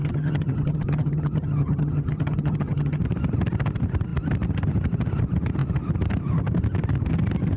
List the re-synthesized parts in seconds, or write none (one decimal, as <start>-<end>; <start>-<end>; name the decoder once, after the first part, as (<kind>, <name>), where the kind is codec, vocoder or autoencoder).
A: 0.0-3.0 (vocoder, HiFi-GAN)